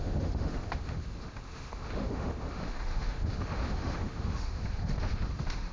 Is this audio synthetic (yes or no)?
yes